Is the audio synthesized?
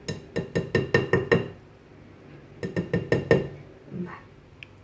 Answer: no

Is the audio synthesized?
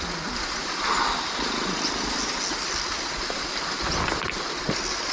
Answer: no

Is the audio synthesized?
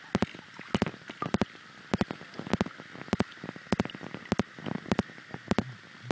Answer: no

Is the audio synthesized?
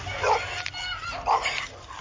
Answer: no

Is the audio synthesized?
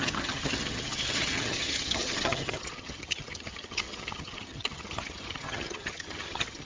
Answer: yes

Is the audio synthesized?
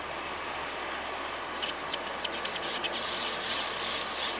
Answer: no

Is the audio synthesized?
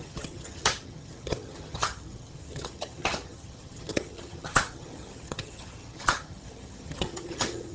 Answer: yes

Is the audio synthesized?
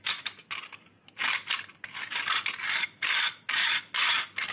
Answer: no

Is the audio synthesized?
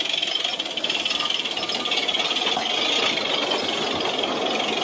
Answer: no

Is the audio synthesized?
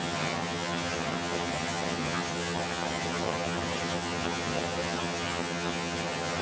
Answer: yes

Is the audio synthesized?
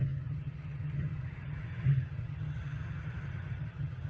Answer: yes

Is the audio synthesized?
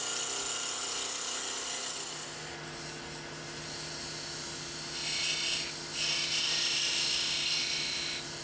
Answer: no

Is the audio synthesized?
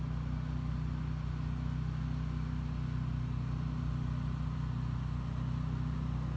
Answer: no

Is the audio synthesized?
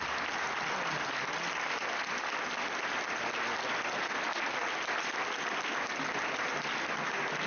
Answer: no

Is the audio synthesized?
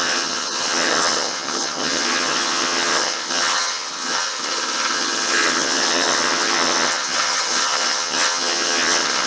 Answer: yes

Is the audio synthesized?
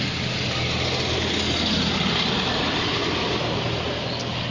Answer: no